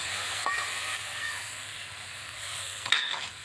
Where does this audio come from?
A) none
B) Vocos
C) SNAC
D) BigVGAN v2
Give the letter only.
C